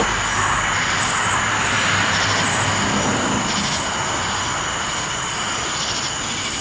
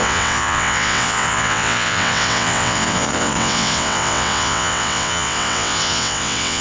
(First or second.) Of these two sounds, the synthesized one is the second